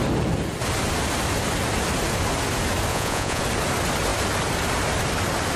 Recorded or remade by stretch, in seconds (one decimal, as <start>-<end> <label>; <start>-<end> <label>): 0.0-2.9 recorded; 2.9-3.4 remade; 3.4-5.6 recorded